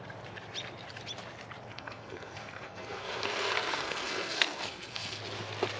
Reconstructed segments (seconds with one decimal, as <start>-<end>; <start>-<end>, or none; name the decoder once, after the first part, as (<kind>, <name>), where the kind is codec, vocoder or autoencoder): 1.7-5.2 (codec, SNAC)